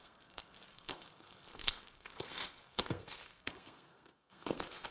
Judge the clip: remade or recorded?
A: remade